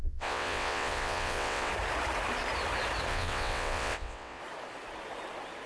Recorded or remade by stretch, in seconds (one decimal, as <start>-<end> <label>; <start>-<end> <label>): 0.0-1.7 remade; 1.7-3.1 recorded; 3.1-4.4 remade; 4.4-5.7 recorded